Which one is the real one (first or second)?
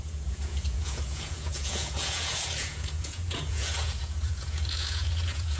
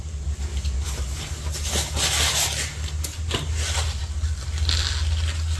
second